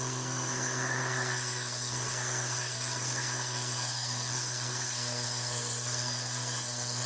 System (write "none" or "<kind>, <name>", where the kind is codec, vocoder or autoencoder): codec, SNAC